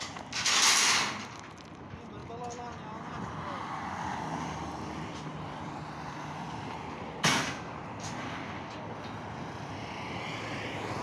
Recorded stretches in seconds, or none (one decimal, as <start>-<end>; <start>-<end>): 0.0-11.0